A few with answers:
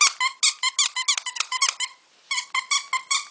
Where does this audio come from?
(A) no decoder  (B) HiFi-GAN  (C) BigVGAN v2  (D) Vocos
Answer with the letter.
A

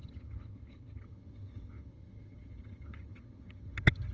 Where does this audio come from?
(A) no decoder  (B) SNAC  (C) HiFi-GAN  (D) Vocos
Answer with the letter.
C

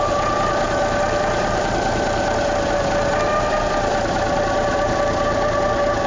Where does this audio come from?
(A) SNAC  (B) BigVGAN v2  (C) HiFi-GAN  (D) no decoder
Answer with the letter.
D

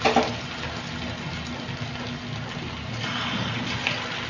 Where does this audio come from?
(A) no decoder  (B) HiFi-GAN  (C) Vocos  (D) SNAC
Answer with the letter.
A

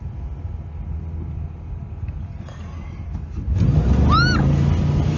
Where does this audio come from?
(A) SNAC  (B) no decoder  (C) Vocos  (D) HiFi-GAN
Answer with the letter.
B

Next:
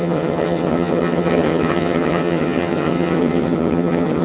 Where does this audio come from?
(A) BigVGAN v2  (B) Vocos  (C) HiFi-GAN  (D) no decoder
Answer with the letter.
C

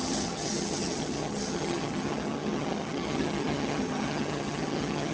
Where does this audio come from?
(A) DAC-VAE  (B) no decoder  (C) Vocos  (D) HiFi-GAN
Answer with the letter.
D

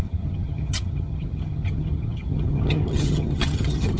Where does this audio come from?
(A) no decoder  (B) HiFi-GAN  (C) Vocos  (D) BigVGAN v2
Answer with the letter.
B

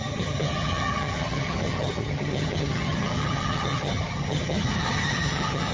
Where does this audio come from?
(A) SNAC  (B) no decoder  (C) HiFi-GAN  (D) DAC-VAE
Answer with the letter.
C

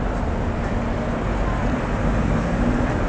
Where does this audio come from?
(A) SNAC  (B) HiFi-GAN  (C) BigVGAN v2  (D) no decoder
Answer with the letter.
D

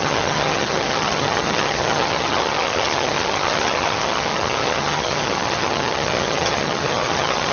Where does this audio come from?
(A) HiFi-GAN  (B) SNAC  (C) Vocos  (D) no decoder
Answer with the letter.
A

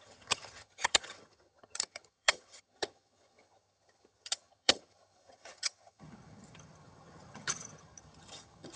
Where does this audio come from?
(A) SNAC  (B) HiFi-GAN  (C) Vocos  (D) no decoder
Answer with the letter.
B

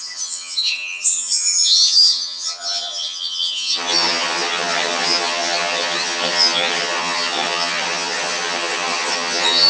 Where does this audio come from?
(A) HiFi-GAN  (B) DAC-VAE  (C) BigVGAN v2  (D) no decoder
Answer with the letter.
A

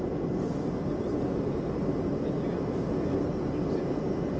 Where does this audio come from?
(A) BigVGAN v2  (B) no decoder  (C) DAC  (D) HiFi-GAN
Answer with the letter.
B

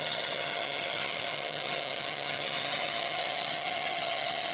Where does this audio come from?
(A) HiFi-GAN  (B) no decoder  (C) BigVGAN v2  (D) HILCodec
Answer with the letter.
A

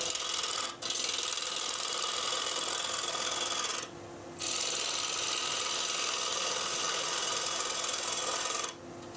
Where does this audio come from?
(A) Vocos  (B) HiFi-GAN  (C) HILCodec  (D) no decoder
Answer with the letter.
D